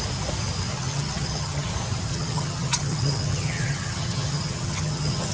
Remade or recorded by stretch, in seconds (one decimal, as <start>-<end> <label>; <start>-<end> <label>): 0.0-0.7 recorded; 0.7-1.7 remade; 1.7-2.1 recorded; 2.1-5.3 remade